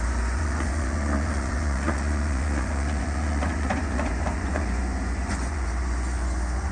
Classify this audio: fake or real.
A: fake